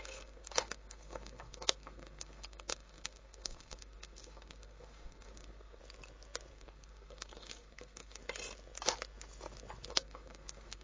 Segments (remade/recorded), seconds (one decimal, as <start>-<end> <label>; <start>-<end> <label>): 0.0-5.8 remade; 5.8-6.5 recorded; 6.5-8.2 remade; 8.2-9.9 recorded; 9.9-10.8 remade